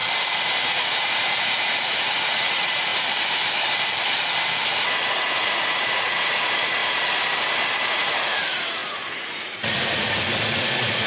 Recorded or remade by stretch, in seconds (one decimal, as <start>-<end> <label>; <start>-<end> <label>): 0.0-0.6 recorded; 0.6-2.9 remade; 2.9-5.1 recorded; 5.1-6.8 remade; 6.8-7.8 recorded; 7.8-11.1 remade